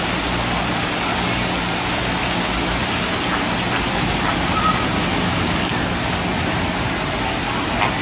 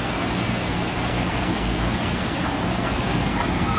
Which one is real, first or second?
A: first